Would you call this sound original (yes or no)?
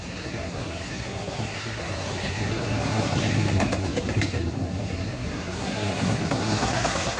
no